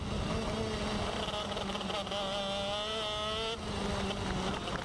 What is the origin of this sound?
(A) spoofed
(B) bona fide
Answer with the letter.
B